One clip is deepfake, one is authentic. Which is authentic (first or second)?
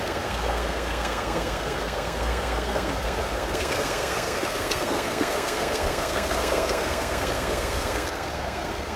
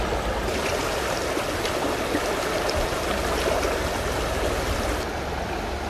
second